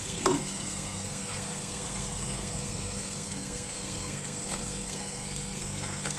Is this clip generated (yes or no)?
yes